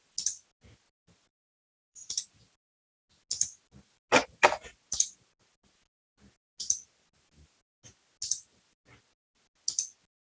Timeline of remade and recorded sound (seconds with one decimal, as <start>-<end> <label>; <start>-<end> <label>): 0.0-1.3 recorded; 1.3-2.4 remade; 2.4-10.3 recorded